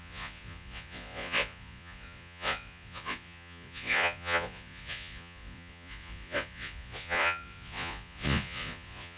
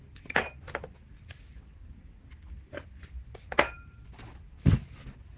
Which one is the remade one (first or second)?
first